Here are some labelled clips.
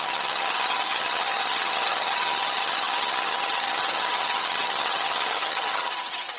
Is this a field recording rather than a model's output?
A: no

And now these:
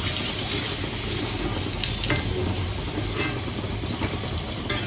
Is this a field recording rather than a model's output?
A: yes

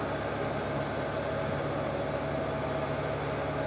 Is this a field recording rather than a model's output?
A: yes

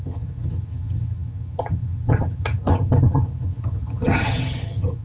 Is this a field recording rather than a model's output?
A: no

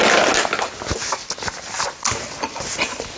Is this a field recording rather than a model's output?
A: yes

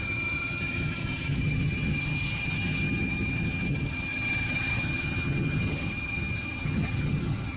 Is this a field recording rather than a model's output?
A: no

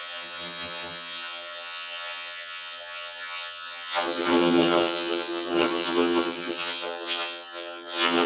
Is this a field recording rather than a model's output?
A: no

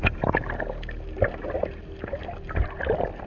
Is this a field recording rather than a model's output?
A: yes